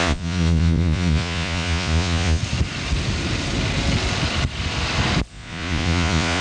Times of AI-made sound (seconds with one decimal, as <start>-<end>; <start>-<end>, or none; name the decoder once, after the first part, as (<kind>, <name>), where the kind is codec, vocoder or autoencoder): 0.0-2.4 (vocoder, Vocos); 5.3-6.4